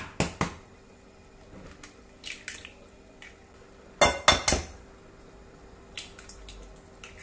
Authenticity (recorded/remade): recorded